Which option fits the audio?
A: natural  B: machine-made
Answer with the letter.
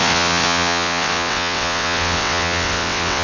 B